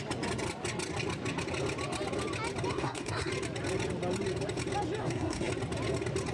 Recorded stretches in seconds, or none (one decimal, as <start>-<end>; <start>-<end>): 0.0-2.7; 3.3-5.0; 5.5-6.3